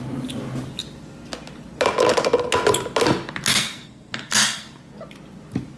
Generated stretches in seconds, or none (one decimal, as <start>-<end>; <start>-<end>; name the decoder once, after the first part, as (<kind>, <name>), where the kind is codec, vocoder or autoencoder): 3.5-4.8 (codec, SNAC)